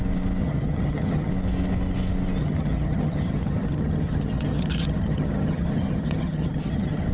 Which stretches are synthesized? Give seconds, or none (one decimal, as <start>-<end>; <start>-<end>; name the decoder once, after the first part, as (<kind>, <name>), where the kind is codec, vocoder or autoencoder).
0.4-1.3 (vocoder, HiFi-GAN); 2.4-7.1

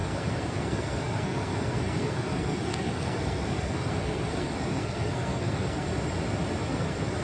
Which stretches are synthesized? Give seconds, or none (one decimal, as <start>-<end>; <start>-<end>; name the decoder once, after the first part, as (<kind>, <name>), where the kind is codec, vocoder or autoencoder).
0.0-5.9 (codec, SNAC); 6.7-7.2

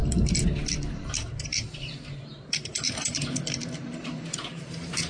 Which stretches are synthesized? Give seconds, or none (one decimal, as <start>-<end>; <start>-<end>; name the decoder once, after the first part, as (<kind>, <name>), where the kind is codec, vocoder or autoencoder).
0.9-5.1 (vocoder, BigVGAN v2)

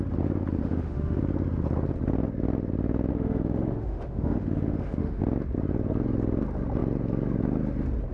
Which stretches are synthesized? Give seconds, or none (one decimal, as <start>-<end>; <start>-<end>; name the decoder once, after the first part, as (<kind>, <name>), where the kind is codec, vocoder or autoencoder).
0.6-1.2 (autoencoder, DAC-VAE); 3.1-5.2

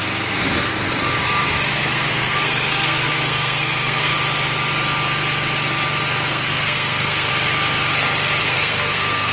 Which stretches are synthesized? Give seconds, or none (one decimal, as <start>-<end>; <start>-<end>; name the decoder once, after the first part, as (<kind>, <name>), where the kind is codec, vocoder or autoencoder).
1.8-4.1 (codec, SNAC); 6.3-7.3; 8.4-9.3

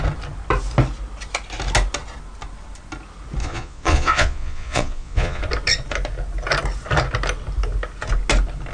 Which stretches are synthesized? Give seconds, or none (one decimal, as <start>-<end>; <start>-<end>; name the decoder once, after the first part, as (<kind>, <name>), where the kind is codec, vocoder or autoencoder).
3.4-5.4 (vocoder, Vocos)

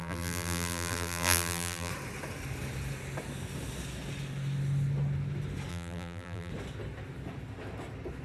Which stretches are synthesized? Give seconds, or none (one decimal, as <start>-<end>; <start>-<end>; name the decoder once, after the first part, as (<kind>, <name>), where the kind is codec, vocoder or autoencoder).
0.0-1.9 (vocoder, BigVGAN v2); 5.7-6.5

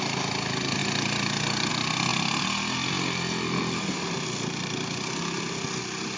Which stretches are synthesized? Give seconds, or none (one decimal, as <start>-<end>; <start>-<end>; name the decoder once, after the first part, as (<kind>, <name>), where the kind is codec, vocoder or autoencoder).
none